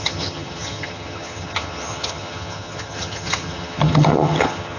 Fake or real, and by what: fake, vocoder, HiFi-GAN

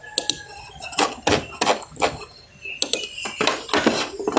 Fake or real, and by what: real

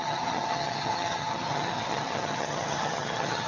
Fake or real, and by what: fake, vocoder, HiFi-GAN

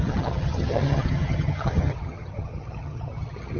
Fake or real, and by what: fake, vocoder, HiFi-GAN